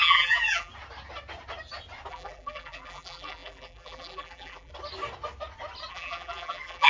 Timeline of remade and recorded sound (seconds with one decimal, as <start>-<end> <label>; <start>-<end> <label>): 0.0-0.7 remade; 0.7-2.1 recorded; 2.1-4.7 remade; 4.7-5.9 recorded; 5.9-6.9 remade